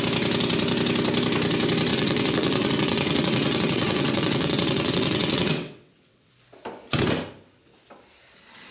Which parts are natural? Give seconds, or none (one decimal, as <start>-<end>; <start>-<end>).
0.0-1.9; 6.3-8.7